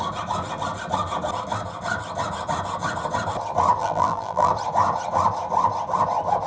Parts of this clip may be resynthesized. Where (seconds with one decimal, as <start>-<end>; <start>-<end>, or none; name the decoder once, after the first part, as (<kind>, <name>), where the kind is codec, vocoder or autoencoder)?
3.8-4.5 (vocoder, BigVGAN v2)